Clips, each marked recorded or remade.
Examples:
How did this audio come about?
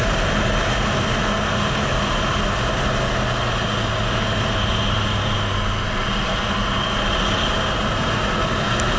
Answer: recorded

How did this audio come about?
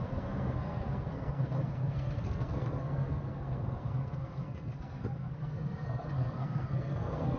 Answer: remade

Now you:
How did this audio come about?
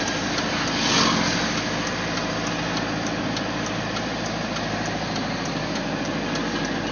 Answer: recorded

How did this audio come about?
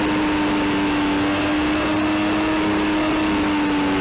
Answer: recorded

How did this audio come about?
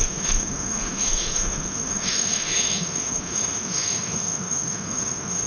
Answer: remade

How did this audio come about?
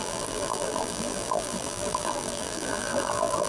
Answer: remade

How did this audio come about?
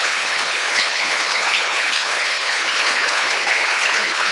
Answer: remade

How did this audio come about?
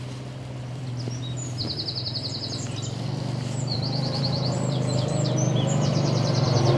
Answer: remade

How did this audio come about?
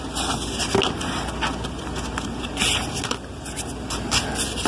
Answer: recorded